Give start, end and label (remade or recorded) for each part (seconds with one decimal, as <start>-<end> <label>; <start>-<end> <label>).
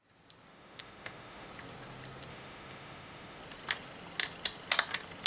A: 0.0-0.5 recorded; 0.5-1.5 remade; 1.5-2.3 recorded; 2.3-3.4 remade; 3.4-5.3 recorded